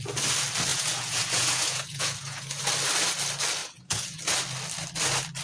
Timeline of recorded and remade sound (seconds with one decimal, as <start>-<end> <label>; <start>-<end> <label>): 0.0-0.7 recorded; 0.7-2.6 remade; 2.6-3.6 recorded; 3.6-4.2 remade; 4.2-5.4 recorded